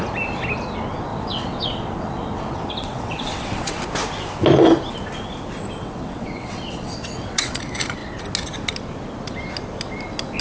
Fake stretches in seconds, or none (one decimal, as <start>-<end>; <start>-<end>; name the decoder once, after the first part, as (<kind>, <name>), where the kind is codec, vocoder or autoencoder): 1.1-3.8 (vocoder, WaveNeXt); 5.8-7.6